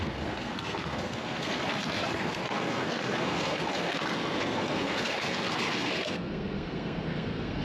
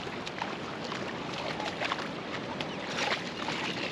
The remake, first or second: first